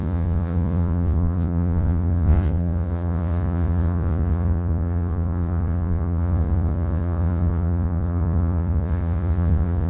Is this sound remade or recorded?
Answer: remade